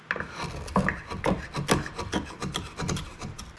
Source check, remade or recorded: recorded